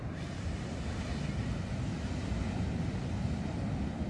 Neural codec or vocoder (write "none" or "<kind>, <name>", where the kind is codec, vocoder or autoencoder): none